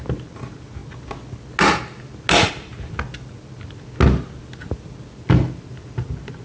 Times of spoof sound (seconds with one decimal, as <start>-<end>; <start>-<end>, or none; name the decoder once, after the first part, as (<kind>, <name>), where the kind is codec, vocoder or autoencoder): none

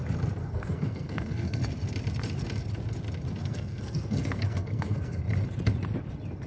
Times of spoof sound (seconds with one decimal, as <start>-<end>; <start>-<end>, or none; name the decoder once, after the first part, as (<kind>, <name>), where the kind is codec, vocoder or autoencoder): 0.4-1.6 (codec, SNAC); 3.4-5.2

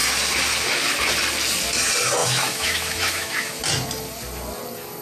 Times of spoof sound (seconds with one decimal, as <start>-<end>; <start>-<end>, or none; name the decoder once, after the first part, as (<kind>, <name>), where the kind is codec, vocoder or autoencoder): 2.2-3.6 (autoencoder, DAC-VAE)

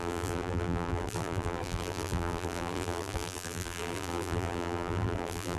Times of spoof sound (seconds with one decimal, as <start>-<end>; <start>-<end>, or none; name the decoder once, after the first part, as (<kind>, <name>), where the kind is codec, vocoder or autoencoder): 0.0-5.6 (vocoder, BigVGAN v2)

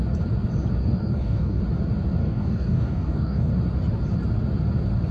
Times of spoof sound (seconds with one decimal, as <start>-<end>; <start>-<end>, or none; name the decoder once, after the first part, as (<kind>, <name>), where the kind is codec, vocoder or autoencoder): 0.8-1.6 (codec, DAC); 2.2-3.5

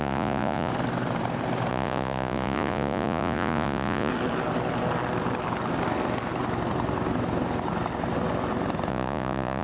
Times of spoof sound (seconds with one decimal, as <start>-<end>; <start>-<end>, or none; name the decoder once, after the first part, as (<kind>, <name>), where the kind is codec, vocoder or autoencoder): 0.0-0.7 (vocoder, Vocos); 1.7-4.1; 8.9-9.6

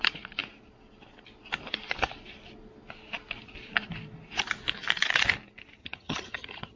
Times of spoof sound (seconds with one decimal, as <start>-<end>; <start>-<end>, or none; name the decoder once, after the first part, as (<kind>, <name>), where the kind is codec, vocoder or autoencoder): 5.8-6.8 (vocoder, HiFi-GAN)